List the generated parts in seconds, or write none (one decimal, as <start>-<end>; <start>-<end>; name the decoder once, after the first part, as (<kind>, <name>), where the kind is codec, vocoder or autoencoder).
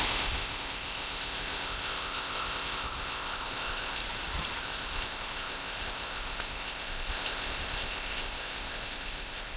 0.0-4.0 (codec, ZipCodec); 4.6-9.6